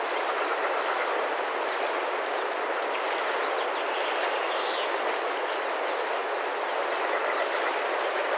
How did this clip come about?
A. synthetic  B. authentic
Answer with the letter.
B